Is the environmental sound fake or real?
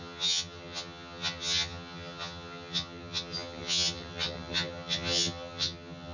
fake